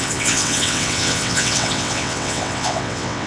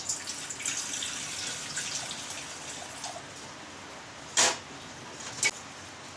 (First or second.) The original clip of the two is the second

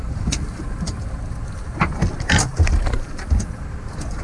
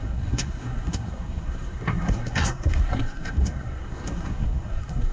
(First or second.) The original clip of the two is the first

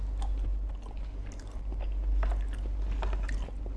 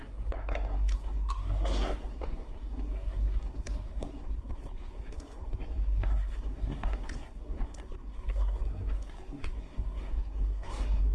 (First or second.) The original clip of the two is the first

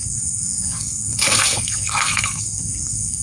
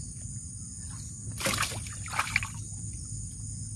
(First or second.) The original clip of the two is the second